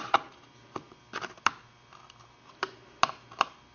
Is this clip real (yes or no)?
yes